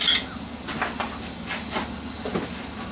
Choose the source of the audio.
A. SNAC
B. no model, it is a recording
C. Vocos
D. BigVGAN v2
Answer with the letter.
B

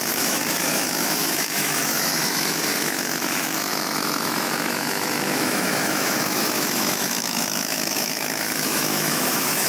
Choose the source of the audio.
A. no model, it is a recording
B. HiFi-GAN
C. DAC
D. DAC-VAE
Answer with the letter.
D